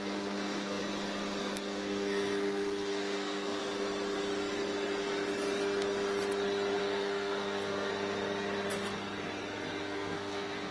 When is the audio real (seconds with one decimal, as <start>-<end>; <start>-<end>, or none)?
0.8-1.4; 3.6-6.8; 7.9-9.8